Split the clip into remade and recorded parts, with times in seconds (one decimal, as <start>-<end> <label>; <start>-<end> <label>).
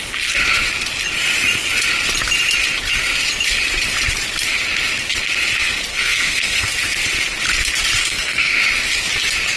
0.0-5.9 recorded; 5.9-6.7 remade; 6.7-8.0 recorded; 8.0-8.6 remade; 8.6-9.6 recorded